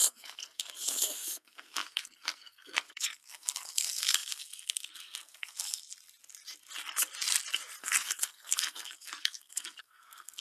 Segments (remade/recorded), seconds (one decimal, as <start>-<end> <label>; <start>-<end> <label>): 0.0-5.9 remade; 5.9-7.8 recorded; 7.8-10.4 remade